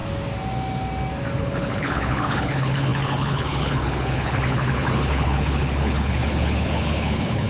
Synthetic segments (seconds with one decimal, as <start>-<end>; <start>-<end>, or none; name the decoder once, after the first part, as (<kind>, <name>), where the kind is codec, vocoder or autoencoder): 1.4-7.5 (codec, HILCodec)